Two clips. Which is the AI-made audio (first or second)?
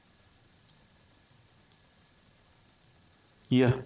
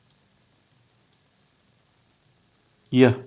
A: first